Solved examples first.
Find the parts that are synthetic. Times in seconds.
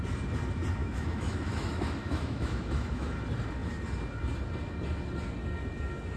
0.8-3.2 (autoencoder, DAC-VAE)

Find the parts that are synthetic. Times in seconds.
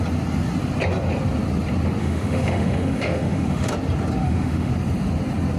2.0-3.7 (autoencoder, DAC-VAE); 4.2-4.7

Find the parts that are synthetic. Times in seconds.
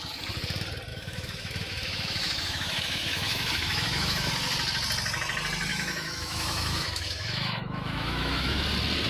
0.9-4.3 (autoencoder, DAC-VAE); 5.7-8.6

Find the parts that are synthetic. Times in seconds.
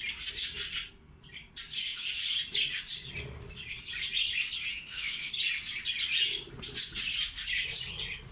4.7-5.3 (autoencoder, DAC-VAE)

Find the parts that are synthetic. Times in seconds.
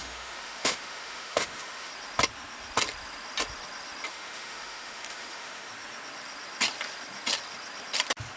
0.0-1.9 (autoencoder, DAC-VAE); 4.1-5.7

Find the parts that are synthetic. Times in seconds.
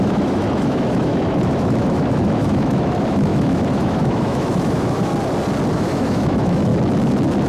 0.0-5.1 (autoencoder, DAC-VAE); 5.7-6.7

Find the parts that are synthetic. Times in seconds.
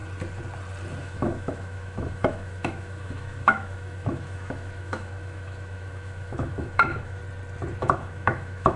1.0-7.2 (autoencoder, DAC-VAE); 7.8-8.8